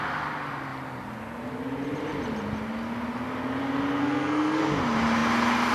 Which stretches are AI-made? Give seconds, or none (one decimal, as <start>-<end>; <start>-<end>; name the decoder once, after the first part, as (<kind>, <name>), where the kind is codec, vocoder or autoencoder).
4.0-4.6 (codec, SNAC)